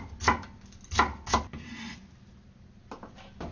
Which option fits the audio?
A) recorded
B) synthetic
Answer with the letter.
A